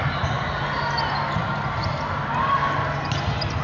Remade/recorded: recorded